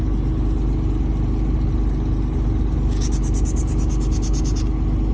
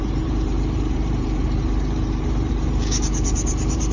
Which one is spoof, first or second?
second